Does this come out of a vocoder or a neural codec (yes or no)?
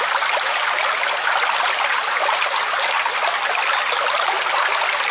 no